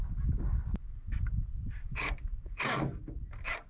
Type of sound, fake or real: real